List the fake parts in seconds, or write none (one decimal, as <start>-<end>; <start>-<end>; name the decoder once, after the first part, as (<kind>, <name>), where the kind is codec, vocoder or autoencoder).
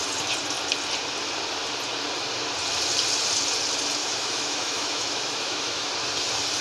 4.0-5.9 (autoencoder, DAC-VAE)